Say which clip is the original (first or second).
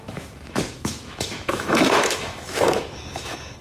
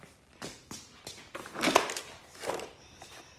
second